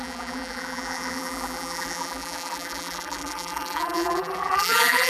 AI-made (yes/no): yes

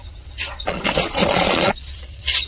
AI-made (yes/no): yes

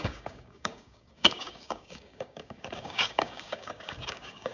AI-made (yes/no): yes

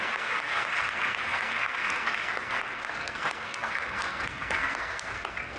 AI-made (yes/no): yes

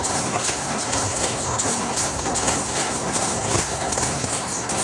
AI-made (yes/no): yes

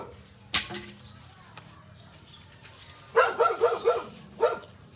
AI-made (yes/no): no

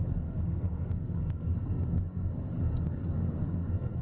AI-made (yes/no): yes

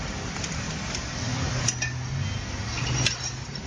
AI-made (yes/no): no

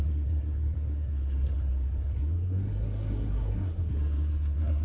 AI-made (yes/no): yes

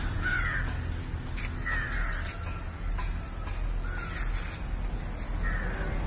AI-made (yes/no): no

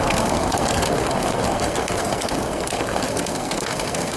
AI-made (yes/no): yes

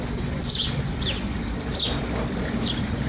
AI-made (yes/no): no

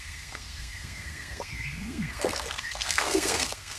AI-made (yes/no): yes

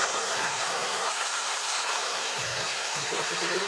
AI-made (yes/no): yes